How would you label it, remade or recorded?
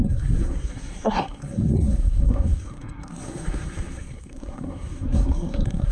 remade